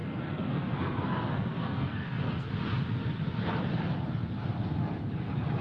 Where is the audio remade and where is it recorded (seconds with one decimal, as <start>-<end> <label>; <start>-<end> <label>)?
0.0-2.5 remade; 2.5-5.6 recorded